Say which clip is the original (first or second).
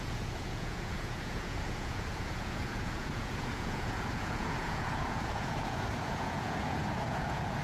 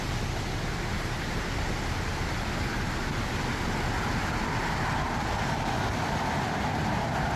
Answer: second